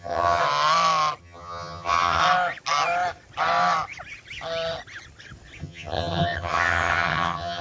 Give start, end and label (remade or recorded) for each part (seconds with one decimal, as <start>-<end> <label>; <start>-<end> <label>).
0.0-0.4 remade; 0.4-1.2 recorded; 1.2-2.2 remade; 2.2-5.6 recorded; 5.6-7.6 remade